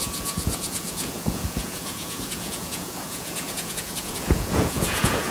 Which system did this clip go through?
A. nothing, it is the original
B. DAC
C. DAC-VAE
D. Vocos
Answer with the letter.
D